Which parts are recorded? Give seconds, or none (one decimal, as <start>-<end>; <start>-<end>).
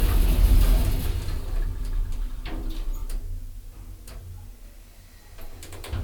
0.0-0.8; 2.6-6.0